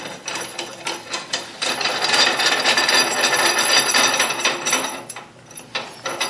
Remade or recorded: remade